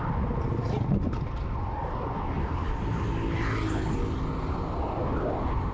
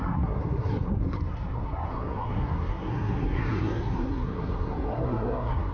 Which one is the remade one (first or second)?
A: second